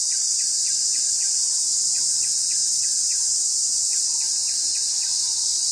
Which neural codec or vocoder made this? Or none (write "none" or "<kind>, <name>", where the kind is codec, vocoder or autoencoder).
none